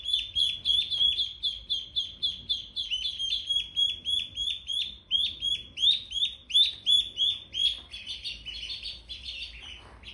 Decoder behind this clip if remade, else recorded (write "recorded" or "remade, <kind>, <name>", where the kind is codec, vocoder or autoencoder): recorded